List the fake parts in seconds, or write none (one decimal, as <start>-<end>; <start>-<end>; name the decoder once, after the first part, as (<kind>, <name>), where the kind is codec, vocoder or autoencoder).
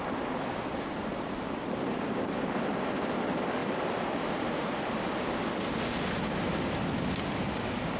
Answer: none